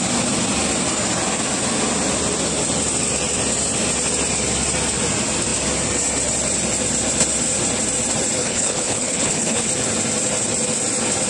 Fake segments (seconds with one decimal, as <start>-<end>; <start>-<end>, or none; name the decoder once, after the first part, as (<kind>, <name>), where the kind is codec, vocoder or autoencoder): 8.4-9.7 (codec, HILCodec)